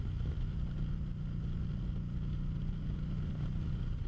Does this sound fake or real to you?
real